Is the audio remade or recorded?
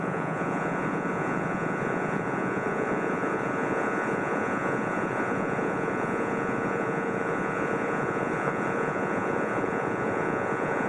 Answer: remade